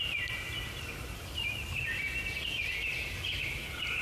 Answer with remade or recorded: recorded